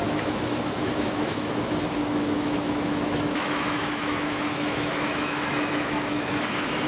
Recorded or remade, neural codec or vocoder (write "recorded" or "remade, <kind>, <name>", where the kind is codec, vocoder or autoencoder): remade, autoencoder, DAC-VAE